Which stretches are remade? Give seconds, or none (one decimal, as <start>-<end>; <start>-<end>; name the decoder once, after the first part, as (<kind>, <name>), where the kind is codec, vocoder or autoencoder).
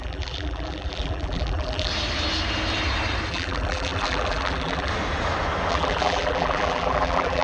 0.0-1.9 (vocoder, BigVGAN v2); 3.3-4.9; 5.7-7.4